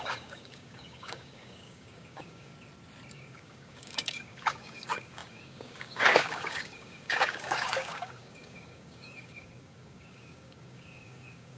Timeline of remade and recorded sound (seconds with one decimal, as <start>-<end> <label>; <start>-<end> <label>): 0.0-2.5 remade; 2.5-3.1 recorded; 3.1-11.6 remade